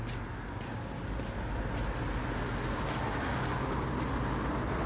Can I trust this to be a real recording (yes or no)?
yes